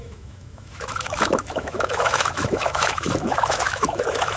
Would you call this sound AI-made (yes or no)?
yes